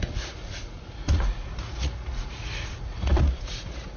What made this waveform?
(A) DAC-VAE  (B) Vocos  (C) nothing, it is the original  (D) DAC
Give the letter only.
B